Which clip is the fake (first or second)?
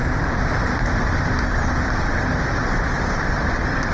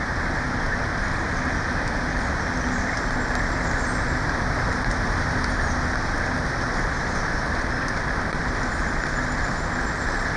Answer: first